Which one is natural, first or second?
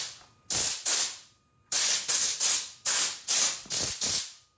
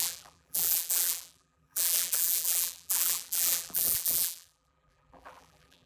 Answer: first